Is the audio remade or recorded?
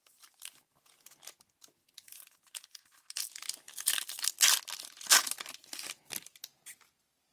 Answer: recorded